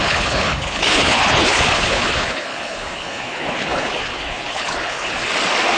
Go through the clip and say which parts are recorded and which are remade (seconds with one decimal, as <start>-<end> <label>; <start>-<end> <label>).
0.0-5.3 remade; 5.3-5.8 recorded